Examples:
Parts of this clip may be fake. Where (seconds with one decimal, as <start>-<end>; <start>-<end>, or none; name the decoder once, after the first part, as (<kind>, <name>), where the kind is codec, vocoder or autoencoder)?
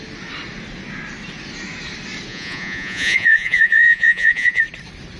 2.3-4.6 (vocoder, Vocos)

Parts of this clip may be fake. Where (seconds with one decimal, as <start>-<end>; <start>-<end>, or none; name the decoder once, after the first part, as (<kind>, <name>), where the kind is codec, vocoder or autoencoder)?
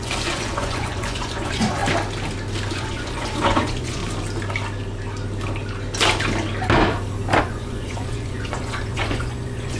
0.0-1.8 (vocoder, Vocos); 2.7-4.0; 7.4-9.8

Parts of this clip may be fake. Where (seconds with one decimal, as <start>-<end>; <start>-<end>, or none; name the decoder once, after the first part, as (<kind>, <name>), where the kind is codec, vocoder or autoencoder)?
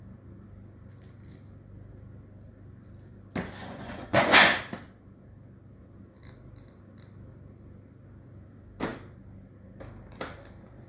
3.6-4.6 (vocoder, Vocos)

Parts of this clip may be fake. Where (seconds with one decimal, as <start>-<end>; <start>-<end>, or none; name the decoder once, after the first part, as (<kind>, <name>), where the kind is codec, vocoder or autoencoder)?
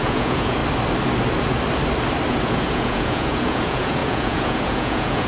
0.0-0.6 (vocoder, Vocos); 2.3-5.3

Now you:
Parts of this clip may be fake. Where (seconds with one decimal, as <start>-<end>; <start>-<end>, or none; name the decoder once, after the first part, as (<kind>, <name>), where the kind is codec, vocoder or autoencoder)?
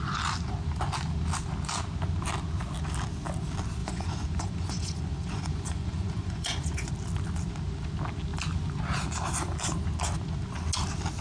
3.8-6.9 (vocoder, Vocos)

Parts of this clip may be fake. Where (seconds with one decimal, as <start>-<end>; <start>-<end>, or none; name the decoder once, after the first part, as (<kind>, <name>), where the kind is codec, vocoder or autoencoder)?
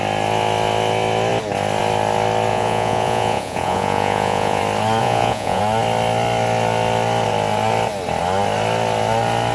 2.5-4.6 (vocoder, Vocos); 5.0-5.6